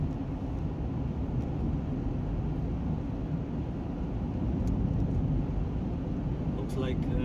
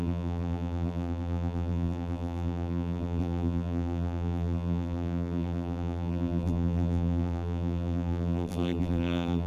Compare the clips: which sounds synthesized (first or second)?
second